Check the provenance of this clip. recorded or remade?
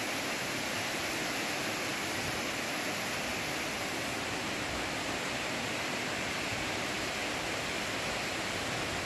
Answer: recorded